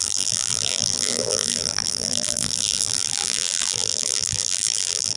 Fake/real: fake